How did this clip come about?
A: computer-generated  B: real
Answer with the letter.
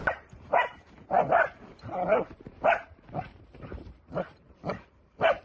A